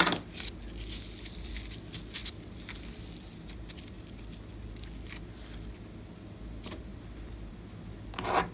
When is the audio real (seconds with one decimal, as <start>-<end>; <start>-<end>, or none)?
0.0-8.5